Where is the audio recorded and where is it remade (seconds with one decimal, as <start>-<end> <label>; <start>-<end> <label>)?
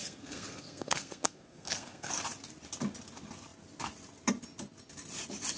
0.0-2.1 remade; 2.1-5.6 recorded